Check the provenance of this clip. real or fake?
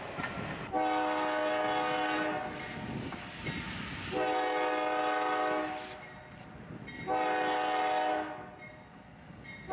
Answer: real